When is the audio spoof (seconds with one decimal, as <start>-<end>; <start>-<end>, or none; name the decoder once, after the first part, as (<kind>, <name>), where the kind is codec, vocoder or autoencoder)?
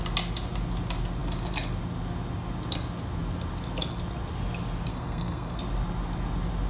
4.9-5.6 (codec, SNAC)